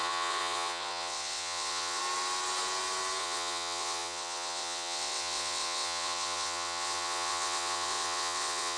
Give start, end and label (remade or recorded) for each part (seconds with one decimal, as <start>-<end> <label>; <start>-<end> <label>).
0.0-2.0 remade; 2.0-3.2 recorded; 3.2-8.8 remade